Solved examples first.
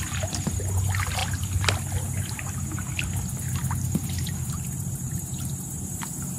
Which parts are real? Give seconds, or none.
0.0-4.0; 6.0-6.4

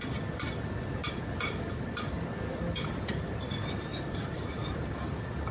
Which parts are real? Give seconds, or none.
0.0-3.9; 4.5-5.5

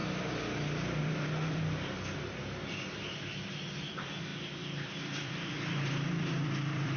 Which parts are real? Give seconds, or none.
0.0-1.0; 4.3-5.1

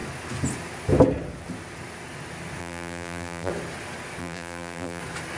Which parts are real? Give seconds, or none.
0.0-2.6; 3.5-4.2; 5.0-5.4

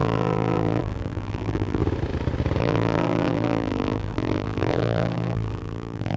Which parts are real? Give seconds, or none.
1.8-2.6

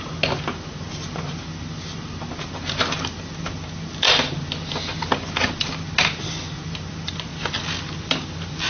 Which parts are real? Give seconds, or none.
0.0-8.7

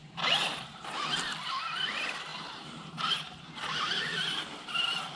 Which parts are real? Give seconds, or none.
1.1-2.3; 4.4-5.2

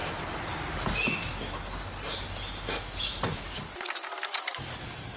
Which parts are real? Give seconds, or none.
0.0-3.1